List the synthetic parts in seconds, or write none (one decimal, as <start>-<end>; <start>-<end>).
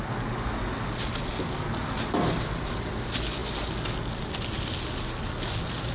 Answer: none